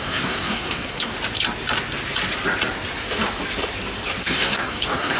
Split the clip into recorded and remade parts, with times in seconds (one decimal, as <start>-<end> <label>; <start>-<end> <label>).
0.0-1.1 remade; 1.1-4.2 recorded; 4.2-5.2 remade